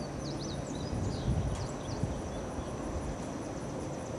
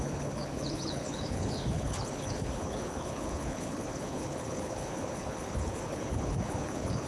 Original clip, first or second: first